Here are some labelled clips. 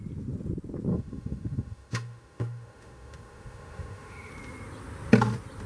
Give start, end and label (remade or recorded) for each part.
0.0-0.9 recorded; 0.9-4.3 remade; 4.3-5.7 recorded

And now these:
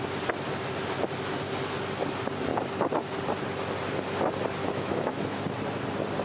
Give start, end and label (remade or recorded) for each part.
0.0-4.6 recorded; 4.6-5.6 remade; 5.6-6.2 recorded

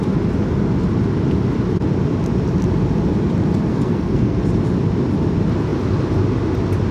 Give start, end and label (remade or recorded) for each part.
0.0-3.7 recorded; 3.7-4.4 remade; 4.4-6.9 recorded

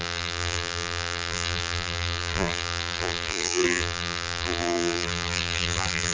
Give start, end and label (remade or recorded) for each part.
0.0-6.1 remade

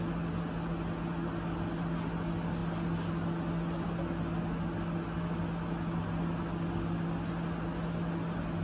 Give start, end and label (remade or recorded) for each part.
0.0-8.6 recorded

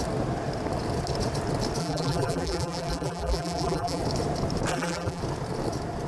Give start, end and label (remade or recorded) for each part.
0.0-1.8 recorded; 1.8-4.0 remade; 4.0-4.7 recorded; 4.7-5.2 remade; 5.2-6.1 recorded

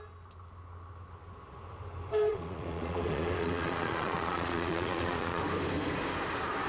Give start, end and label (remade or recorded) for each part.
0.0-2.3 recorded; 2.3-5.4 remade; 5.4-6.7 recorded